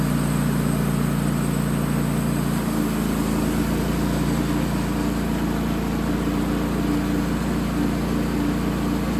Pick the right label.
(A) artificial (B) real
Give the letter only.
B